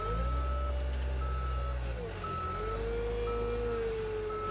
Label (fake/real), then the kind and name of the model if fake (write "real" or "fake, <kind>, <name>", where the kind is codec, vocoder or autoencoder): real